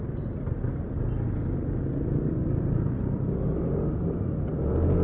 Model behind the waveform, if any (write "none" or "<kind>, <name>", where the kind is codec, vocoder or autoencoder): none